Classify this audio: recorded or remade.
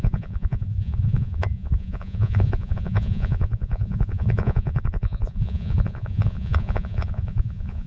remade